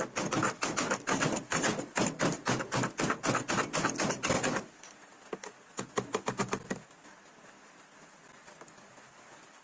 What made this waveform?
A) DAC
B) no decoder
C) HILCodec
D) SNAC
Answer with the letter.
B